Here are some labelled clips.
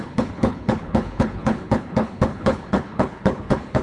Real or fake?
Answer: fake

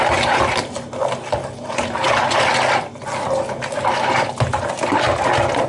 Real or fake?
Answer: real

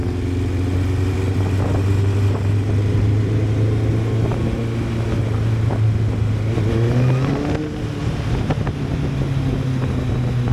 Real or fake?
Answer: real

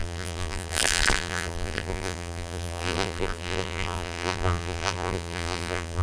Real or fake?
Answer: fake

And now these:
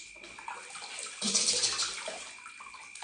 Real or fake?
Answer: real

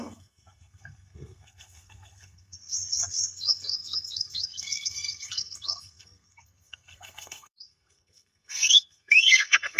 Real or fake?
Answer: fake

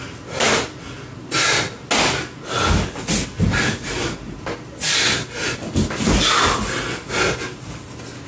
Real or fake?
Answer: real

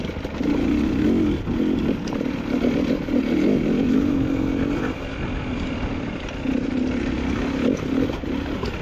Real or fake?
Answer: real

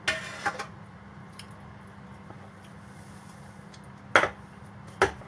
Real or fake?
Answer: real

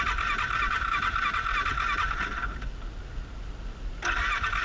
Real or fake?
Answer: real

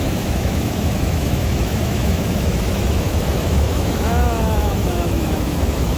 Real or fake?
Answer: fake